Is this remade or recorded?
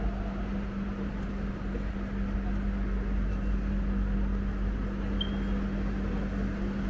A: recorded